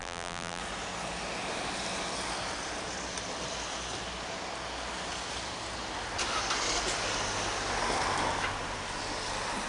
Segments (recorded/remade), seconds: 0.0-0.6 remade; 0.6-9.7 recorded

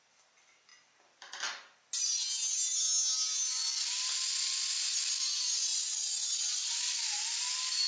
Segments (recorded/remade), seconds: 0.0-5.7 recorded; 5.7-7.9 remade

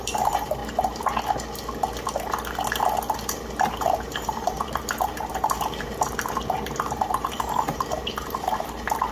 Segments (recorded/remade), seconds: 0.0-0.6 remade; 0.6-3.8 recorded; 3.8-9.1 remade

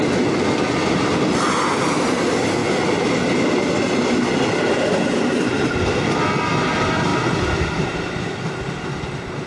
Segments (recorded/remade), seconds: 0.0-9.5 recorded